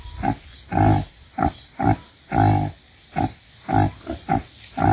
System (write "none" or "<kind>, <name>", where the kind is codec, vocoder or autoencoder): none